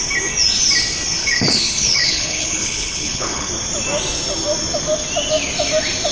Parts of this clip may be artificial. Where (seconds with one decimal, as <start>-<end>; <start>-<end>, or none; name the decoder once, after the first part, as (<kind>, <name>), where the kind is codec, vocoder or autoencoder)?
1.2-3.5 (codec, HILCodec)